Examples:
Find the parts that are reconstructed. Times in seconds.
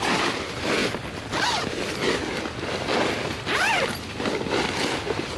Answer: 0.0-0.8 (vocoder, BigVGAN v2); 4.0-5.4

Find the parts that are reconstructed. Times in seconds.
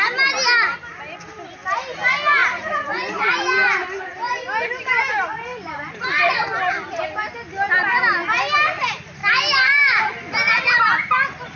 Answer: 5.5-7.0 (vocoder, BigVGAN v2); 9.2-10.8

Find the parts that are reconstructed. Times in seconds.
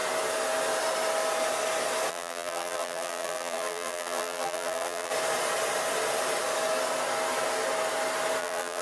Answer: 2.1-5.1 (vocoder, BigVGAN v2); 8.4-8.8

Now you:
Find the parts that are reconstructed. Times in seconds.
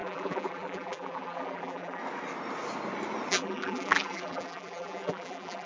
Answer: 0.0-2.0 (vocoder, BigVGAN v2); 3.3-5.7